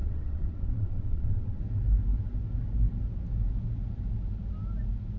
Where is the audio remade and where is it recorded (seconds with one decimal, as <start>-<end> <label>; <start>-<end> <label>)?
0.0-1.6 remade; 1.6-5.2 recorded